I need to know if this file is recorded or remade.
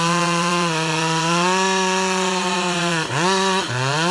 remade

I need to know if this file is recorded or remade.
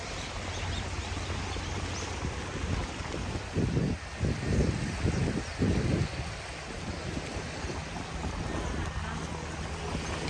recorded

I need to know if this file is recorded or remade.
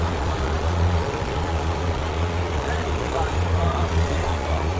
remade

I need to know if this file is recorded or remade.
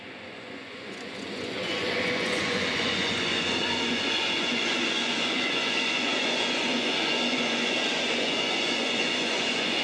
remade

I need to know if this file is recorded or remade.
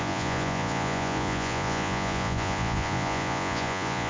remade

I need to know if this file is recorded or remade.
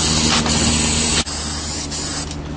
recorded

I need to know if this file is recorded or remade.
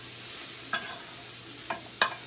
recorded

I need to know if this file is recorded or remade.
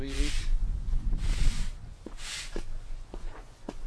remade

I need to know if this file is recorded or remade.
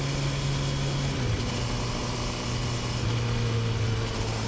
recorded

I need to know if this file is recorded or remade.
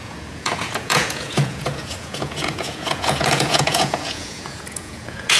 remade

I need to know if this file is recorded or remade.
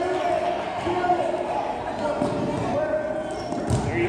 recorded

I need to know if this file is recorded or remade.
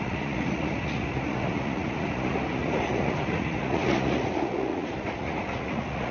remade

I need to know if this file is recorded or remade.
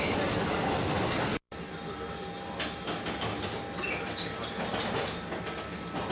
recorded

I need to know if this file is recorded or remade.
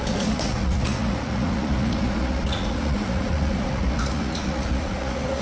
remade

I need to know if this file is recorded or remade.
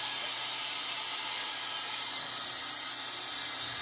recorded